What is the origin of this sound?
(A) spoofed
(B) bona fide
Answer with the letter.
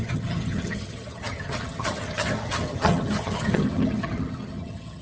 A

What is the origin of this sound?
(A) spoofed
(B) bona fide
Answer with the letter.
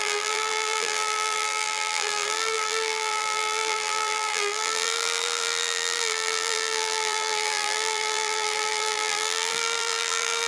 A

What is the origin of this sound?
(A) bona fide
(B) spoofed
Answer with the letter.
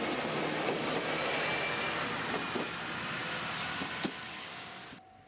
A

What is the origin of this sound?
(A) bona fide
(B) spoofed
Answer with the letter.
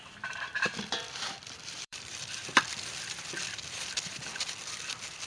B